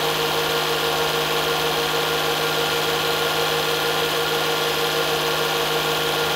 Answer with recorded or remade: recorded